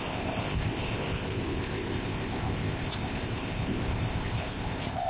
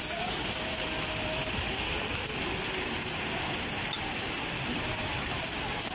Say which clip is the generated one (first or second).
first